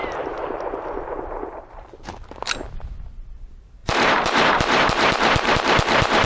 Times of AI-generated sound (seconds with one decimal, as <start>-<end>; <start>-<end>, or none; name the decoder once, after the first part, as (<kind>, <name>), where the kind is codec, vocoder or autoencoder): 0.0-2.1 (vocoder, BigVGAN v2); 3.8-6.3